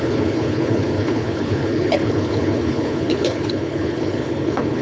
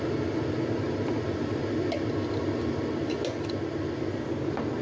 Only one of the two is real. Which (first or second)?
second